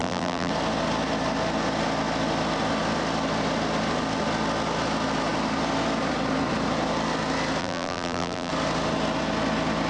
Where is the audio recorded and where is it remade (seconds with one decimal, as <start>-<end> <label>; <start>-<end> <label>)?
0.0-0.5 remade; 0.5-7.6 recorded; 7.6-8.5 remade; 8.5-9.9 recorded

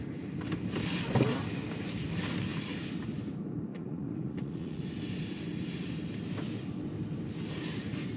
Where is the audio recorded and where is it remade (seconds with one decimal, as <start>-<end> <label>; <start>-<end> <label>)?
0.0-3.7 recorded; 3.7-4.8 remade; 4.8-8.2 recorded